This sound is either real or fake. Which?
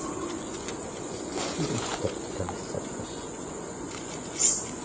fake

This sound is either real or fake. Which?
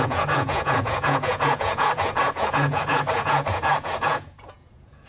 fake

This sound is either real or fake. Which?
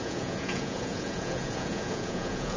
fake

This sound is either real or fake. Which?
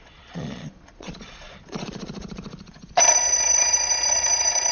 fake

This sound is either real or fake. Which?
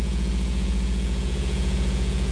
fake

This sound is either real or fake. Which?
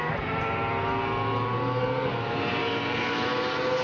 real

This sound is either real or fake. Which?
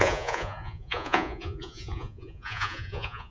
fake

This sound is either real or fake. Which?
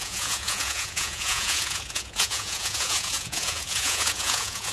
fake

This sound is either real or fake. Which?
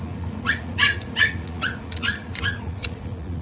fake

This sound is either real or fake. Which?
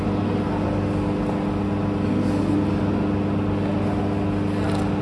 real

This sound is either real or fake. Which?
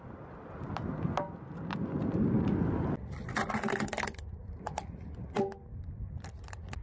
real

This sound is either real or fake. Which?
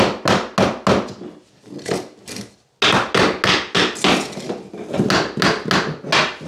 real